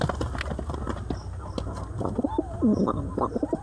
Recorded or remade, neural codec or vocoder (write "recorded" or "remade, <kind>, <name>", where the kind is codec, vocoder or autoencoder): recorded